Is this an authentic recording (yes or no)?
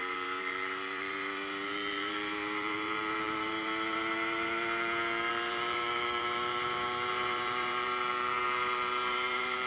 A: no